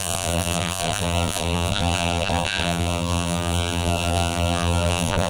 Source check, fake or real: fake